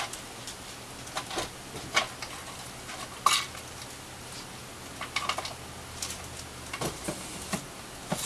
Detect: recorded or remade recorded